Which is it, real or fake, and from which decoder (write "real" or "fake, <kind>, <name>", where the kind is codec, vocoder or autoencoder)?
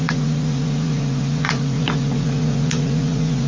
fake, vocoder, Vocos